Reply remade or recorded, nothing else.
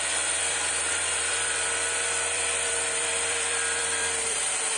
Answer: remade